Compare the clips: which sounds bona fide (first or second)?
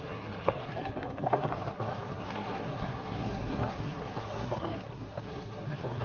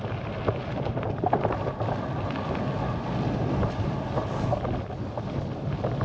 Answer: second